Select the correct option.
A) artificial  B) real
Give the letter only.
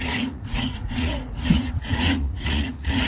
A